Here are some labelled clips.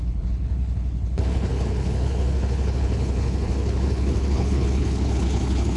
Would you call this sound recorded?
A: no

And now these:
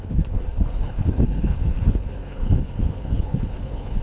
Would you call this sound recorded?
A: no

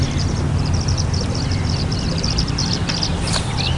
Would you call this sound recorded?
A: yes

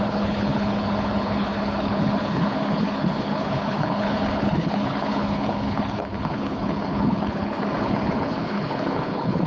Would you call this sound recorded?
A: no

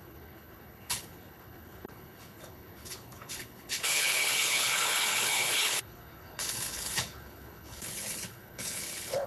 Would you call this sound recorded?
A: no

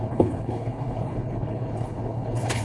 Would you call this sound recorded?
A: no